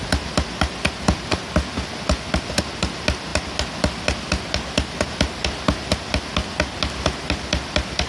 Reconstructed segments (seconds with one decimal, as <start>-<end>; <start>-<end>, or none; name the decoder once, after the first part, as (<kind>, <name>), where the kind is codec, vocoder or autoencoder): none